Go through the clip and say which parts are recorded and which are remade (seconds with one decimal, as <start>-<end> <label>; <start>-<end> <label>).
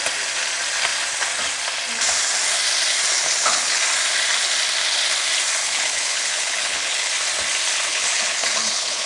0.0-3.2 recorded; 3.2-3.8 remade; 3.8-5.6 recorded; 5.6-7.1 remade; 7.1-7.9 recorded; 7.9-9.1 remade